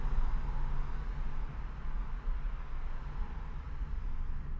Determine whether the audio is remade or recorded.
recorded